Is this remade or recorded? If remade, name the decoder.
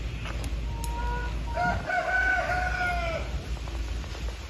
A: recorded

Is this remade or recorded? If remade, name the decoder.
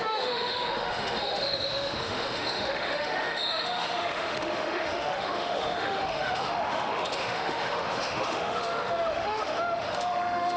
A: remade, autoencoder, DAC-VAE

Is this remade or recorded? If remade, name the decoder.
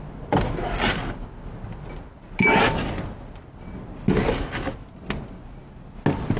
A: recorded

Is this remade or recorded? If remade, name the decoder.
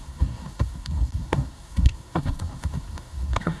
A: remade, codec, SNAC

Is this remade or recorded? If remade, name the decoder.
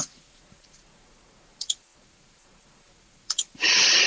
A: remade, vocoder, Vocos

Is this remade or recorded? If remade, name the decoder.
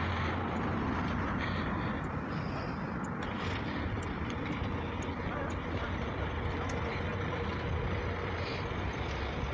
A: recorded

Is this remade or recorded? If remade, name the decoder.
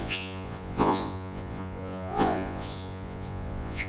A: remade, vocoder, Vocos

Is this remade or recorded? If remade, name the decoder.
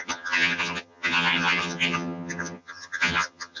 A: remade, vocoder, HiFi-GAN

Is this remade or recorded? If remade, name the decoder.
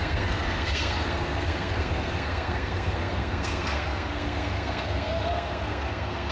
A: remade, codec, SNAC